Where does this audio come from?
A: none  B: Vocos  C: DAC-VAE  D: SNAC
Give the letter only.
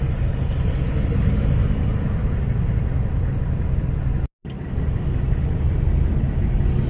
A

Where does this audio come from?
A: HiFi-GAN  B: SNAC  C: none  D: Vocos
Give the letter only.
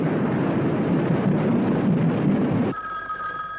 C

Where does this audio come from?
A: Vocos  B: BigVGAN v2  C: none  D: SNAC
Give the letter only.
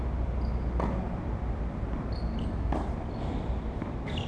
C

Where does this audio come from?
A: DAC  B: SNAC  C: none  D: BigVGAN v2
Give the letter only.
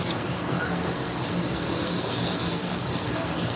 B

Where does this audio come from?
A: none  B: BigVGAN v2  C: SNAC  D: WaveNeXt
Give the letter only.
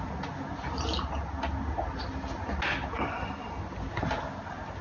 A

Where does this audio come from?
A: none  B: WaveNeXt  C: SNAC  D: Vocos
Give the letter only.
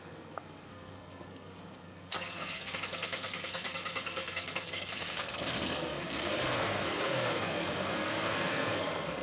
C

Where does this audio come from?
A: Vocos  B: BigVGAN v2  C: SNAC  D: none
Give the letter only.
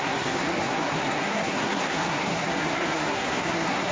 C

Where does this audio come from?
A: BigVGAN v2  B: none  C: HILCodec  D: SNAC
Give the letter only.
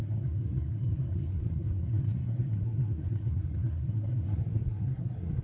D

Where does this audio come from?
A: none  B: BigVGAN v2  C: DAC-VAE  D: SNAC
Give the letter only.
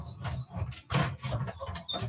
A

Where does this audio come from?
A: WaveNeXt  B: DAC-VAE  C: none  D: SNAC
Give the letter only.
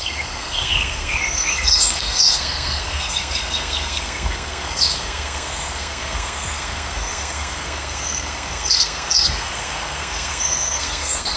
D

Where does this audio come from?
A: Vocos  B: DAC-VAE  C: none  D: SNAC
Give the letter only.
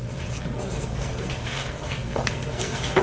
D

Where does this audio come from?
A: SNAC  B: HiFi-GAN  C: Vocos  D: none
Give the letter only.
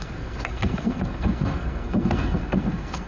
A